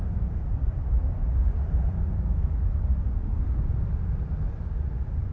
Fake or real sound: real